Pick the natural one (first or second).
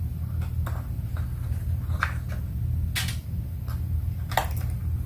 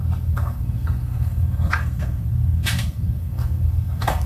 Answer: first